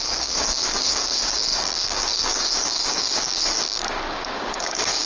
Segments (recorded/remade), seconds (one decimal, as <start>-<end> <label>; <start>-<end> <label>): 0.0-5.1 remade